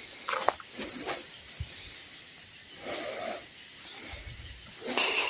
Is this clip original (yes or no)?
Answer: yes